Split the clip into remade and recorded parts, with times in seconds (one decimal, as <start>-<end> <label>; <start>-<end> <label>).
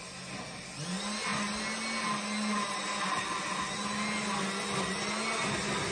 0.0-5.9 recorded